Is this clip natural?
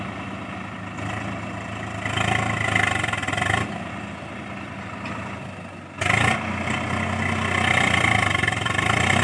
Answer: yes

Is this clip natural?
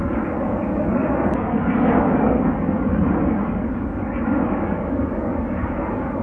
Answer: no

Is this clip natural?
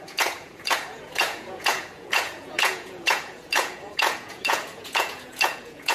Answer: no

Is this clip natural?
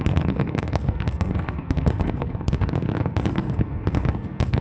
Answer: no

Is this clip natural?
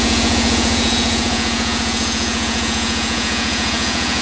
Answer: no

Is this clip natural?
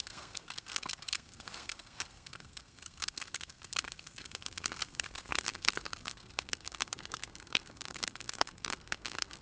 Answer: no